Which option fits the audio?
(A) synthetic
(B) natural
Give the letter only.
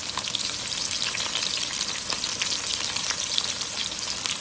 B